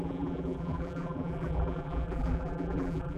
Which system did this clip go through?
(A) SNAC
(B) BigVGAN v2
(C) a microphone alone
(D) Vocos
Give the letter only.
B